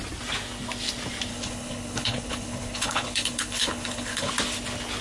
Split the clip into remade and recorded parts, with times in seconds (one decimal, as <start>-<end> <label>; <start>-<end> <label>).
0.0-1.3 recorded; 1.3-4.3 remade; 4.3-5.0 recorded